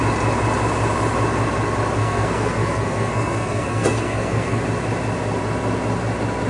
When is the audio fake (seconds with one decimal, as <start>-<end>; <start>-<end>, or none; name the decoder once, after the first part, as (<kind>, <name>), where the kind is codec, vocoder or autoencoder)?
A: 2.0-4.6 (codec, SNAC)